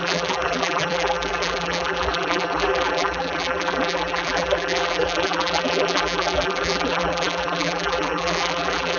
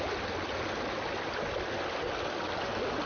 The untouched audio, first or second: second